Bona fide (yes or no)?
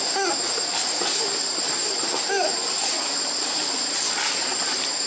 yes